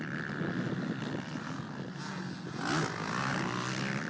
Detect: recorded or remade recorded